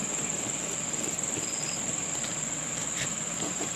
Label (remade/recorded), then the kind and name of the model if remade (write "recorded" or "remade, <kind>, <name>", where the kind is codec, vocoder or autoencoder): recorded